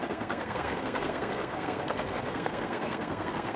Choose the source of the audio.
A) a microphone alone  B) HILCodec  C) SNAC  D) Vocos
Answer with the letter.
C